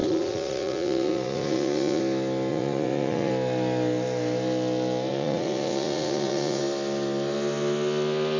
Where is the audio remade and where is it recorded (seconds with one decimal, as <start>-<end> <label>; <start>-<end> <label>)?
0.0-2.0 remade; 2.0-2.5 recorded; 2.5-3.3 remade; 3.3-5.1 recorded; 5.1-6.6 remade; 6.6-8.4 recorded